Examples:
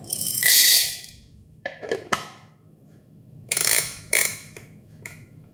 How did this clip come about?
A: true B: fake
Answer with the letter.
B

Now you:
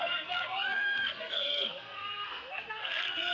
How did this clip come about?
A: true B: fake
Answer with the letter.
B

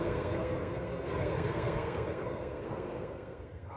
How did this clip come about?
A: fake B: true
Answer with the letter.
A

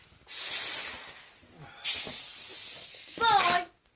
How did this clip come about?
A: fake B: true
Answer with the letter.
B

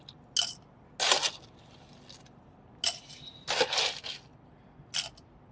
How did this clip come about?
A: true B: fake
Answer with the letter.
A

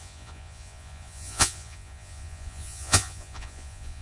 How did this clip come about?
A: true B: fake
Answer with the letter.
B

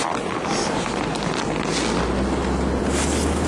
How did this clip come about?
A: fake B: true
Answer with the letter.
B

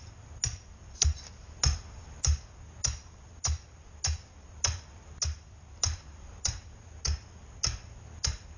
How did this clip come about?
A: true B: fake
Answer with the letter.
A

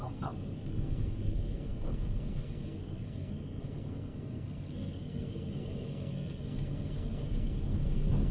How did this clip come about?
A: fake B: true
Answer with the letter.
A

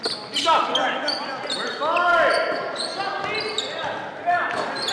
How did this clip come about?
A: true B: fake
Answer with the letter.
A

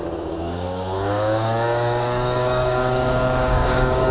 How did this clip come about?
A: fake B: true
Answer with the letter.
A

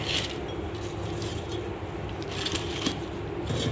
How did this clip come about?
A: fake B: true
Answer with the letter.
B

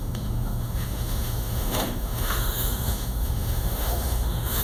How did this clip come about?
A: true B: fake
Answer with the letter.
B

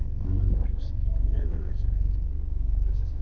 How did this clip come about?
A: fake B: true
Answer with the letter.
A